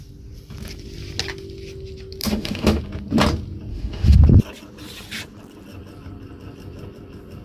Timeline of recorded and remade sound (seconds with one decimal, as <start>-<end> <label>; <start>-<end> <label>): 0.0-2.2 recorded; 2.2-2.8 remade; 2.8-3.7 recorded; 3.7-4.2 remade; 4.2-7.4 recorded

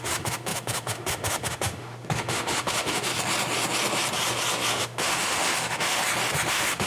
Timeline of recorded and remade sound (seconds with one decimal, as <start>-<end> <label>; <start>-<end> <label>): 0.0-3.1 remade; 3.1-4.7 recorded; 4.7-6.0 remade; 6.0-6.5 recorded; 6.5-6.9 remade